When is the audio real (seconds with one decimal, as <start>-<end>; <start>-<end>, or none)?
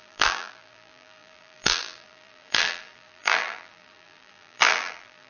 none